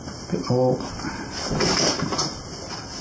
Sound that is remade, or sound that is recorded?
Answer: recorded